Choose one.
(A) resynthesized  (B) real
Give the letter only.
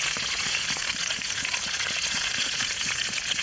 A